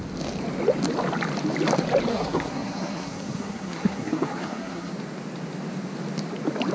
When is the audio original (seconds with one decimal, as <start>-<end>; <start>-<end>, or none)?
0.0-2.1; 4.9-6.7